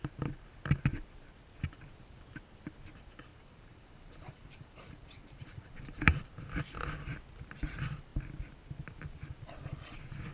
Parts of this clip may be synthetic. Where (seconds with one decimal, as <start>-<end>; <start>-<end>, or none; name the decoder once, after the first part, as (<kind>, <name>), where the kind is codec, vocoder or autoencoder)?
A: 3.3-6.3 (vocoder, BigVGAN v2)